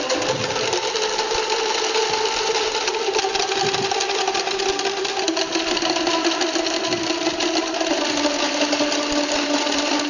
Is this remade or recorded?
recorded